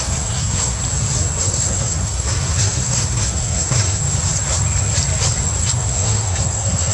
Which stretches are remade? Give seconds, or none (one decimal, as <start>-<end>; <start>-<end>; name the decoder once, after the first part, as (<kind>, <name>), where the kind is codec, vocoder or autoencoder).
0.0-0.8 (codec, SNAC); 1.4-4.0; 5.6-6.9